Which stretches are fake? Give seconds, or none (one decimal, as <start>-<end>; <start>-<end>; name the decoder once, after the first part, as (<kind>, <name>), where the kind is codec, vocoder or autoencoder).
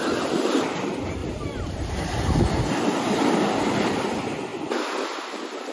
1.2-2.4 (vocoder, BigVGAN v2)